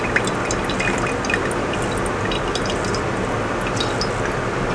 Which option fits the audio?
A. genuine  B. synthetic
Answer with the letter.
A